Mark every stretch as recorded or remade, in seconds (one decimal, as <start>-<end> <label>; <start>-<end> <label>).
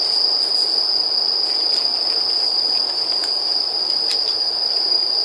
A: 0.0-1.9 recorded; 1.9-5.2 remade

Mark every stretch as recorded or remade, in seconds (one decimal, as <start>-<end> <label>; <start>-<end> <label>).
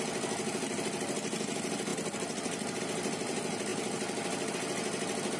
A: 0.0-5.4 recorded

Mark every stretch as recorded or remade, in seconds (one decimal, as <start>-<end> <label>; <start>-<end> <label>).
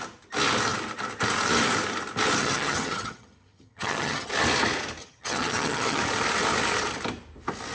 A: 0.0-2.4 recorded; 2.4-4.3 remade; 4.3-5.0 recorded; 5.0-6.0 remade; 6.0-7.7 recorded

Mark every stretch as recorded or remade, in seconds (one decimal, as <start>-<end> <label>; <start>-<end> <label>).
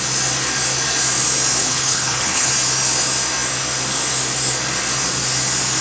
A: 0.0-1.6 recorded; 1.6-2.5 remade; 2.5-5.8 recorded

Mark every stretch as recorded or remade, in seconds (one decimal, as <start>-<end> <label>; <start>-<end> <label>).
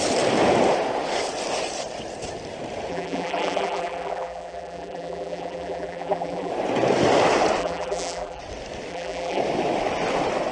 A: 0.0-2.9 recorded; 2.9-6.5 remade; 6.5-7.6 recorded; 7.6-8.4 remade; 8.4-8.9 recorded; 8.9-9.4 remade; 9.4-10.5 recorded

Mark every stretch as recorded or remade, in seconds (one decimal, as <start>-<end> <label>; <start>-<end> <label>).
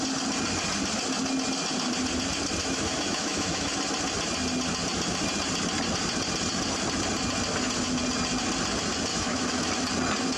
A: 0.0-2.6 recorded; 2.6-3.7 remade; 3.7-9.1 recorded; 9.1-9.7 remade; 9.7-10.4 recorded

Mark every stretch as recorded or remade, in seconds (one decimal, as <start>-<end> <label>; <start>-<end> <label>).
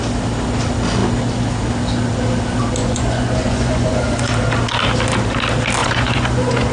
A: 0.0-2.8 recorded; 2.8-4.3 remade; 4.3-5.8 recorded; 5.8-6.7 remade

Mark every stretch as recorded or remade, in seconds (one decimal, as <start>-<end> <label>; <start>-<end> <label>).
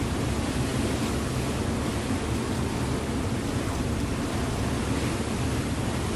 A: 0.0-6.2 recorded